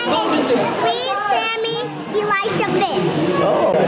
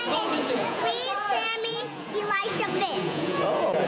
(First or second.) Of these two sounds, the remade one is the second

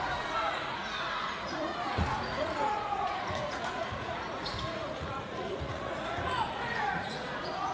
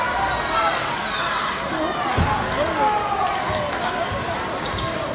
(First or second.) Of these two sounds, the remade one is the first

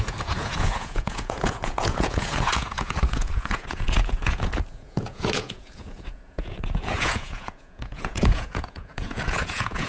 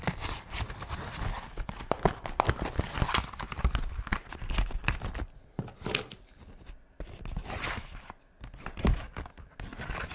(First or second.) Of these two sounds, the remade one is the first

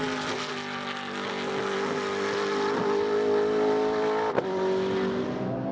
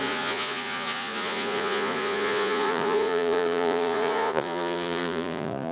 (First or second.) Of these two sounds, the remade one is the second